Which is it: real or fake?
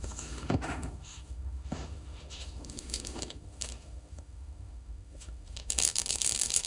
fake